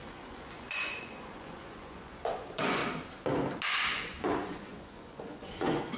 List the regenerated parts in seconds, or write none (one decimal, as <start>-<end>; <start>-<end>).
0.0-2.8; 3.7-6.0